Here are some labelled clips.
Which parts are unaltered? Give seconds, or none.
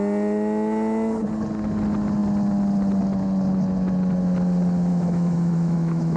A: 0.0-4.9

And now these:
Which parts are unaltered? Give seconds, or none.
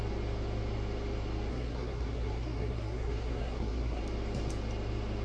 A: 0.0-1.5; 4.0-5.2